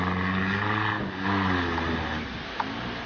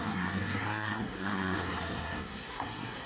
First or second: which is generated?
second